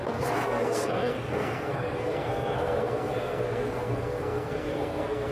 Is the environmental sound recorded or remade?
remade